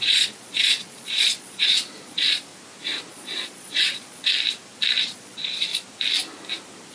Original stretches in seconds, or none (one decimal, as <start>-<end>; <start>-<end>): 2.5-3.1; 4.3-5.0; 5.7-6.9